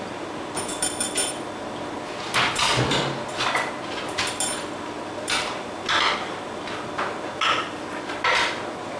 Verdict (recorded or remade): recorded